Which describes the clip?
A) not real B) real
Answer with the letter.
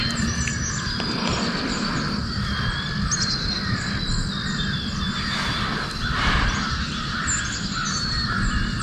B